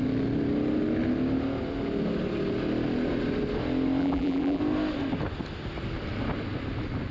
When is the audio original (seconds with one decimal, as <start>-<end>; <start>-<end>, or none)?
0.0-4.0; 4.6-7.1